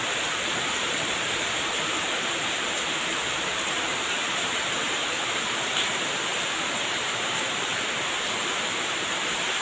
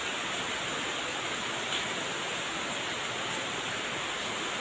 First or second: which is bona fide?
second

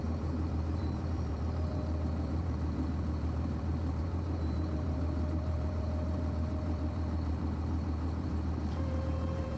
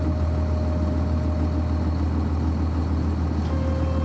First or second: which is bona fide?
second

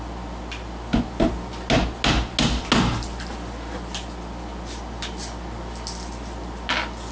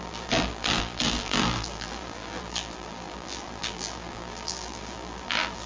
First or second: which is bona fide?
first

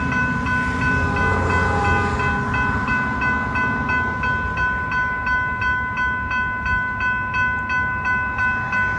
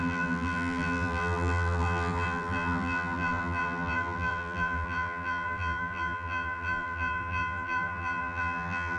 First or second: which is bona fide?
first